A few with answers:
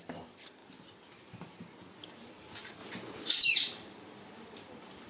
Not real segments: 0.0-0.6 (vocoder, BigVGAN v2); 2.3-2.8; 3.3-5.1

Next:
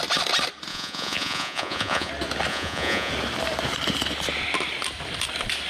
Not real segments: 0.7-2.1 (vocoder, Vocos); 2.5-3.1

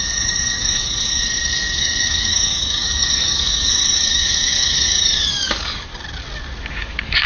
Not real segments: 0.0-5.9 (codec, DAC); 6.7-7.3

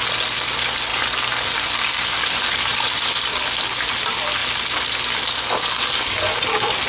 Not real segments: 0.9-3.4 (vocoder, BigVGAN v2); 4.4-5.9

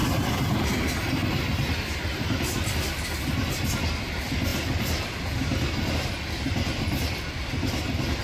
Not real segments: none

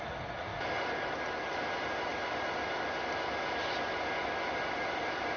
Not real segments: none

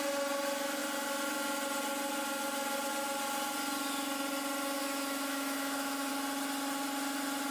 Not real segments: 4.8-6.1 (autoencoder, DAC-VAE)